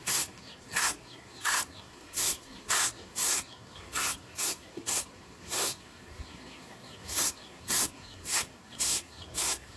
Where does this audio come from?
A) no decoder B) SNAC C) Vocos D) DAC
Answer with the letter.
B